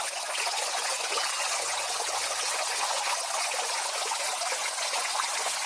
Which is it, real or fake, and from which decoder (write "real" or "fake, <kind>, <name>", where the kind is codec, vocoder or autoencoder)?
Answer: fake, vocoder, Vocos